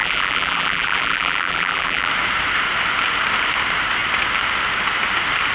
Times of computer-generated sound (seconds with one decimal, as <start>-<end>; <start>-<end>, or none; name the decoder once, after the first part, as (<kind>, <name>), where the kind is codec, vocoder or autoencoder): 0.0-2.1 (vocoder, BigVGAN v2)